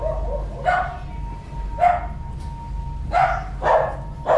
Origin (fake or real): real